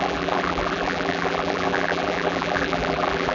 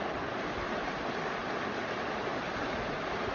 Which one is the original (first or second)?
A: second